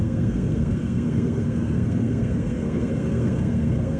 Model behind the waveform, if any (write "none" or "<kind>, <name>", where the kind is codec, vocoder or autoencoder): codec, SNAC